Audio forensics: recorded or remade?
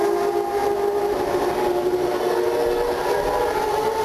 recorded